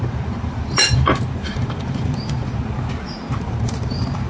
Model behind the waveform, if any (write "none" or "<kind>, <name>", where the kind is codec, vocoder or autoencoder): vocoder, BigVGAN v2